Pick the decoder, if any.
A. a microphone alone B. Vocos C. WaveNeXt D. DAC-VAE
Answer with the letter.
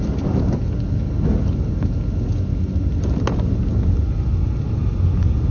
A